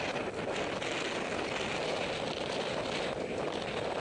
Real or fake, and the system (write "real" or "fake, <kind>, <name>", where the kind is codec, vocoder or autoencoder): real